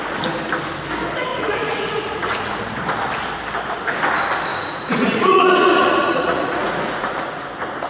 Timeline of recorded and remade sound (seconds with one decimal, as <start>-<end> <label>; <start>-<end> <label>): 0.0-1.3 recorded; 1.3-2.6 remade; 2.6-4.5 recorded; 4.5-7.5 remade; 7.5-7.9 recorded